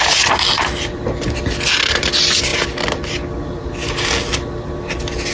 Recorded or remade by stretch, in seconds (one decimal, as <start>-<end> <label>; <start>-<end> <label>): 0.0-5.3 recorded